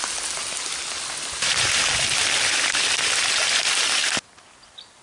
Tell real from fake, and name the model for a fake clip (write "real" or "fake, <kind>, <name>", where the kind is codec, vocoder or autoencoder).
real